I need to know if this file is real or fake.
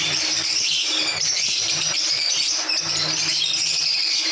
fake